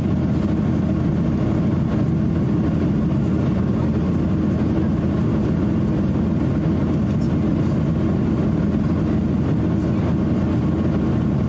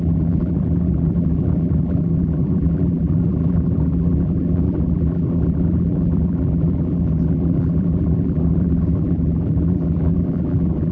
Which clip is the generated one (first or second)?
second